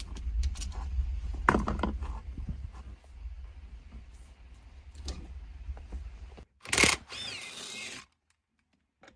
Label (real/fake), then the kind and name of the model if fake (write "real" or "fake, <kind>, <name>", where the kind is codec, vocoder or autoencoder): real